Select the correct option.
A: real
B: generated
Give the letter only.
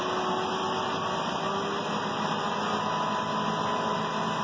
A